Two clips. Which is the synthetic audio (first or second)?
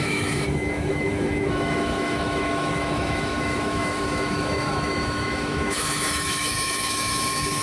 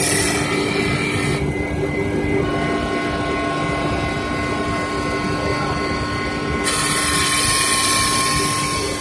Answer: first